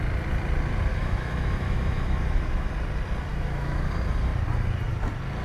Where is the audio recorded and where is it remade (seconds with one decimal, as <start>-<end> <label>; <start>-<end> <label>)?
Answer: 0.0-0.9 recorded; 0.9-2.7 remade; 2.7-3.3 recorded; 3.3-3.9 remade; 3.9-5.4 recorded